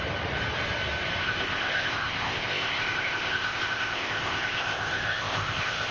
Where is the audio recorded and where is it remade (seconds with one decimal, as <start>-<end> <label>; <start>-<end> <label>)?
0.0-1.2 recorded; 1.2-5.9 remade